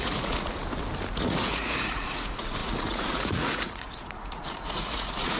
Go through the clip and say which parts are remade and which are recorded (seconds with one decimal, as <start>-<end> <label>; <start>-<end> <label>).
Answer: 0.0-0.6 remade; 0.6-1.1 recorded; 1.1-5.4 remade